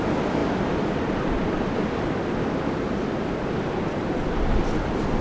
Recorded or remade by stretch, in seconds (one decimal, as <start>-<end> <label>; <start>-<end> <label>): 0.0-5.2 recorded